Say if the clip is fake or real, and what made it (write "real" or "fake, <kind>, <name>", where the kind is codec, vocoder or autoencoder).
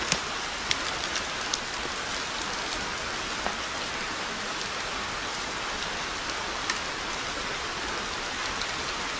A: real